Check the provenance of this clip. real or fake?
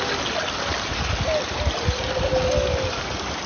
real